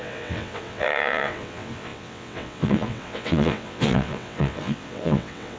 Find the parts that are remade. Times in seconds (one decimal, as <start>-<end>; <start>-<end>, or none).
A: 0.0-5.6